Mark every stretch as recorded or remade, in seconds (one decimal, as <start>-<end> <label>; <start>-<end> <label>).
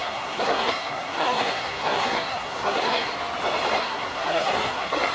0.0-3.1 remade; 3.1-3.8 recorded; 3.8-5.1 remade